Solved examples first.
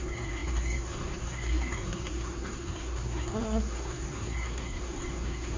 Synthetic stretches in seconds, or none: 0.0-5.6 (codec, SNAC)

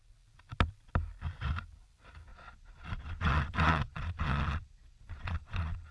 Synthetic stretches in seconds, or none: 2.3-5.9 (vocoder, Vocos)

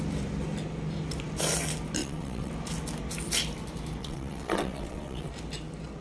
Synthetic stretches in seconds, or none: 2.0-2.5 (vocoder, WaveNeXt); 4.0-5.3